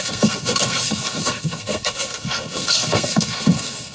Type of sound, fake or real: fake